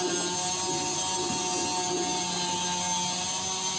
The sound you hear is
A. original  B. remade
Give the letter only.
A